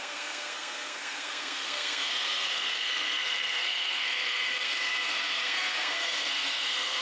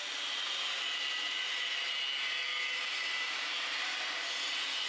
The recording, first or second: second